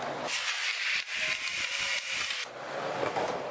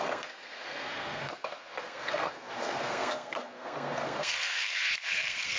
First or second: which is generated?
second